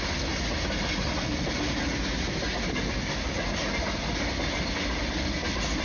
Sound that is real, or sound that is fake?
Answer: real